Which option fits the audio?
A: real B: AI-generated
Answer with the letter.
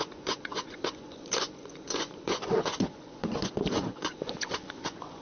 B